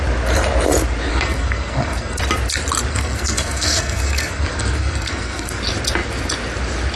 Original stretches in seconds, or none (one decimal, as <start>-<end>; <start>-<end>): 0.0-1.1; 2.2-2.9; 5.6-7.0